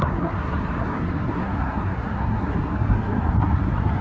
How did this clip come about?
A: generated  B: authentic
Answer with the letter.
A